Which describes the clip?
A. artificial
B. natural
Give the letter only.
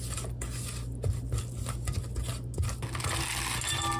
B